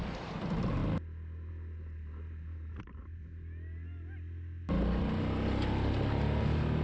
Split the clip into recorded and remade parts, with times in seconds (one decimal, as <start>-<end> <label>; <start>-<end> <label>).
0.0-6.8 recorded